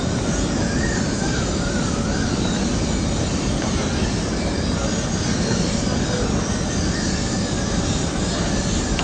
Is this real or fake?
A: real